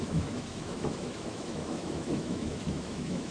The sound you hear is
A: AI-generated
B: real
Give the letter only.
A